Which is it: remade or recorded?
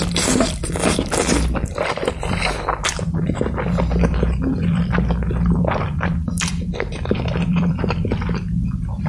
remade